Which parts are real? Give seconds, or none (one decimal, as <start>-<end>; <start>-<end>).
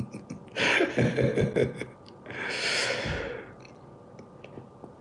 0.0-5.0